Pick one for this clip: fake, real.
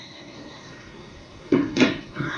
fake